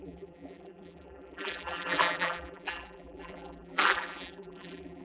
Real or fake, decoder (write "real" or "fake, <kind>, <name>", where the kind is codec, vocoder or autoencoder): fake, vocoder, BigVGAN v2